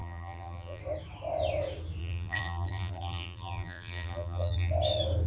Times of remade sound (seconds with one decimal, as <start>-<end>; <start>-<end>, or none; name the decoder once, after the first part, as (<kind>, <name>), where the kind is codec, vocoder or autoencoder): 0.0-0.8 (vocoder, BigVGAN v2); 2.0-4.7